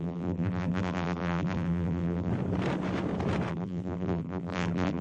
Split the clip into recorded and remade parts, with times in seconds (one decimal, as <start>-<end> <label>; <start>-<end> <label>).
0.0-2.3 remade; 2.3-3.5 recorded; 3.5-5.0 remade